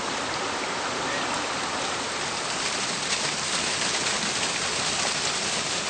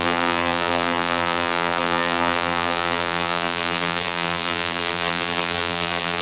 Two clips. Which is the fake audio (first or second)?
second